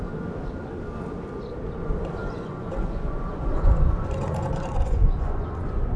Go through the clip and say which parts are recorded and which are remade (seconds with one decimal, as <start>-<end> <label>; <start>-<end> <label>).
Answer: 0.0-2.2 recorded; 2.2-6.0 remade

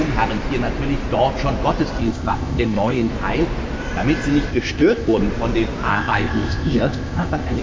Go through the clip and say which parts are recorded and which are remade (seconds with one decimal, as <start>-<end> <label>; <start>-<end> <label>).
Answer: 0.0-2.0 recorded; 2.0-3.1 remade; 3.1-4.5 recorded; 4.5-5.2 remade; 5.2-5.9 recorded; 5.9-7.6 remade

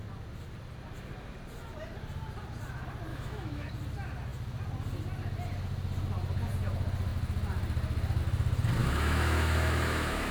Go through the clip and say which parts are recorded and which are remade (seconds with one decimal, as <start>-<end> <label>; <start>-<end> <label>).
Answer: 0.0-3.1 recorded; 3.1-3.7 remade; 3.7-8.8 recorded; 8.8-10.3 remade

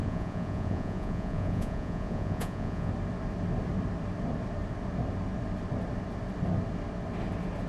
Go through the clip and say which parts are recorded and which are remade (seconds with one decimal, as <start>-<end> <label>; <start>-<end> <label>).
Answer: 0.0-2.9 remade; 2.9-7.7 recorded

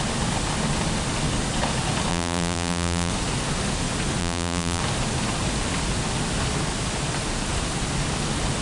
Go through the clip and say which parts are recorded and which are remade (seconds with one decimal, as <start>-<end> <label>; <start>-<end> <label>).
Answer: 0.0-2.1 recorded; 2.1-3.1 remade; 3.1-4.2 recorded; 4.2-4.8 remade; 4.8-8.6 recorded

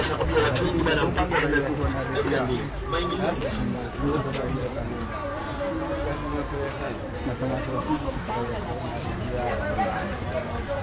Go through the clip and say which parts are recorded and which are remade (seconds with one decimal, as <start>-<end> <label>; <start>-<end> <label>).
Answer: 0.0-7.7 recorded; 7.7-8.3 remade; 8.3-10.8 recorded

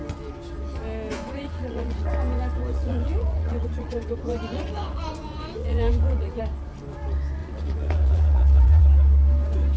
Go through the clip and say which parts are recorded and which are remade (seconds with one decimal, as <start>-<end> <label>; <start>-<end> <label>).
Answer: 0.0-1.1 recorded; 1.1-2.1 remade; 2.1-2.7 recorded; 2.7-6.4 remade; 6.4-7.4 recorded; 7.4-8.8 remade; 8.8-9.8 recorded